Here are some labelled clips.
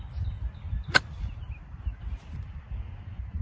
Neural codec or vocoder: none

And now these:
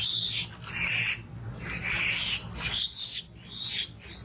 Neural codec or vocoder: none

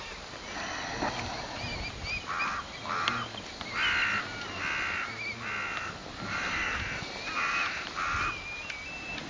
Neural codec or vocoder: none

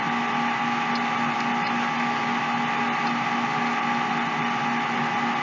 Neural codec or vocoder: none